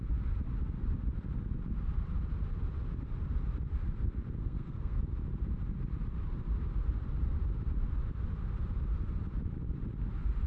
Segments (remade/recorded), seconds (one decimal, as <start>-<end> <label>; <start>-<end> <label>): 0.0-4.4 recorded; 4.4-5.0 remade; 5.0-10.5 recorded